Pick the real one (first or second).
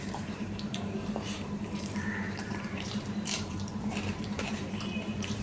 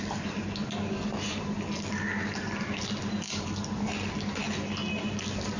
second